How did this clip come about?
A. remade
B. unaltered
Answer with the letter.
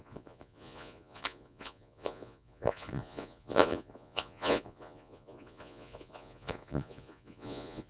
A